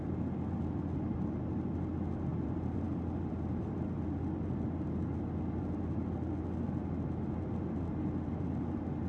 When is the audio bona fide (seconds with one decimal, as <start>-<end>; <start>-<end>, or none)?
0.0-2.3; 4.0-6.8; 7.3-9.1